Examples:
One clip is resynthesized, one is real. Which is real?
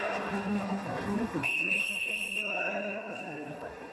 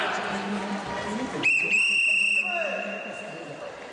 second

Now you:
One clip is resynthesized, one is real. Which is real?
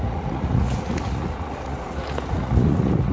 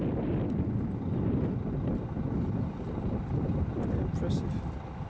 second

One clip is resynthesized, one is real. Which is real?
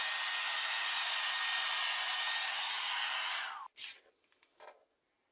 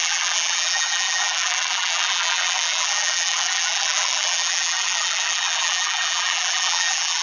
first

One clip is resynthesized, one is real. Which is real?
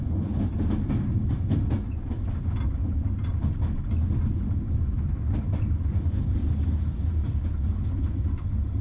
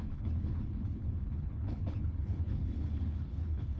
first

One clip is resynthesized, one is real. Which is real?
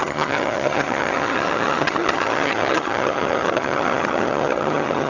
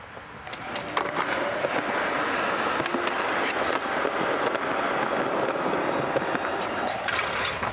second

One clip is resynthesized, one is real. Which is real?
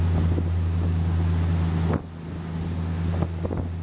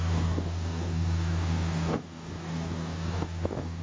first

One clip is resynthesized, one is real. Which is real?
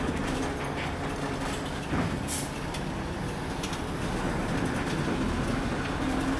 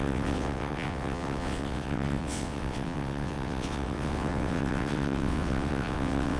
first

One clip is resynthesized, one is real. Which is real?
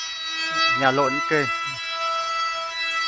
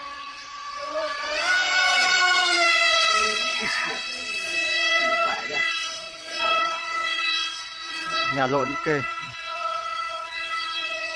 first